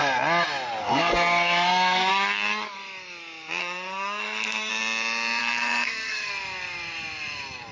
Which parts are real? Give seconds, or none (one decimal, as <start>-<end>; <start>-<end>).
0.0-0.8; 2.1-3.6; 4.7-5.4; 6.3-7.7